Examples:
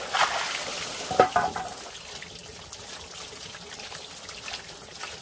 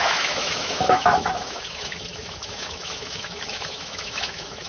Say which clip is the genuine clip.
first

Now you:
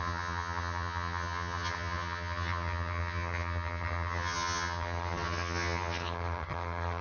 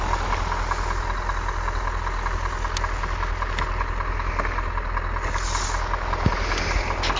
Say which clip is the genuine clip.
second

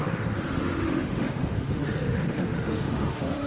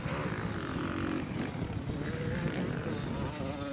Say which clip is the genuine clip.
second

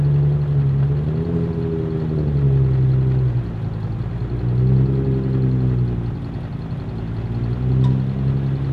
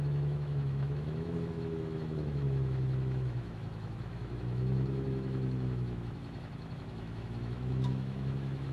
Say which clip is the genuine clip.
first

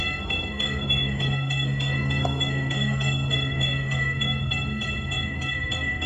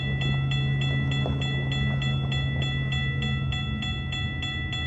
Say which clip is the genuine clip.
second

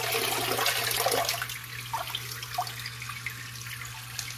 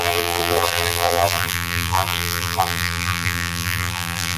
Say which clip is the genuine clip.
first